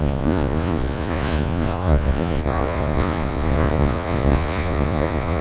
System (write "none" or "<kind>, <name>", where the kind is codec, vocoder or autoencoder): vocoder, Vocos